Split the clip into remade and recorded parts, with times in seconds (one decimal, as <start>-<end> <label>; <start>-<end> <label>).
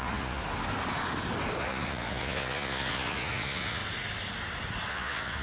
0.0-0.4 remade; 0.4-1.6 recorded; 1.6-3.8 remade; 3.8-4.9 recorded; 4.9-5.4 remade